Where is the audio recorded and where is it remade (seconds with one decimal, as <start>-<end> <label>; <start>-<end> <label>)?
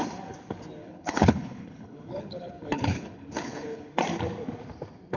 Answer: 0.0-0.8 recorded; 0.8-3.9 remade; 3.9-5.2 recorded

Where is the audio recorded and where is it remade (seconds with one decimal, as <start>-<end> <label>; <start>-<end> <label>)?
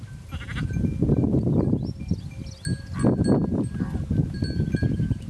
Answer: 0.0-5.3 recorded